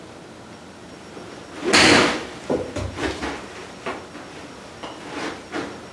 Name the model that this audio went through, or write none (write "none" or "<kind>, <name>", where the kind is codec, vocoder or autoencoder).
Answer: none